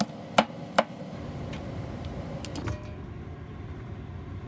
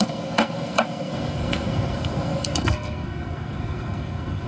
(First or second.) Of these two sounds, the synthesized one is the second